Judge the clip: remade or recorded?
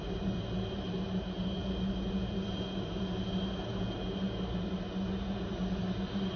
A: remade